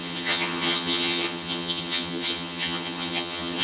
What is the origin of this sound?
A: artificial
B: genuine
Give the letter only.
A